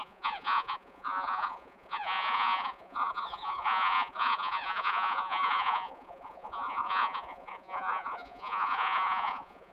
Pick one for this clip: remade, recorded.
remade